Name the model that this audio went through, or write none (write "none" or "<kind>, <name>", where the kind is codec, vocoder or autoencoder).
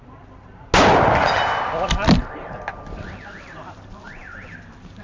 none